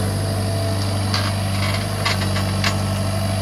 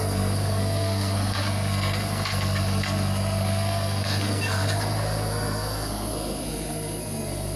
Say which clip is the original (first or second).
first